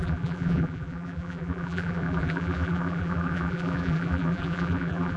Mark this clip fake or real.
fake